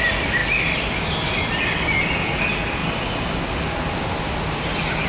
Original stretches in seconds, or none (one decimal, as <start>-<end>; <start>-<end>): 0.0-5.1